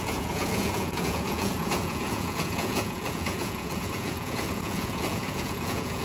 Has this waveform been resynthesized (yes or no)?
yes